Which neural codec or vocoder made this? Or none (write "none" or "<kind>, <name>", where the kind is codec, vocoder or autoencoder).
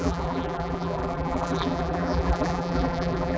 vocoder, BigVGAN v2